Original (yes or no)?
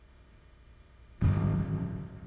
no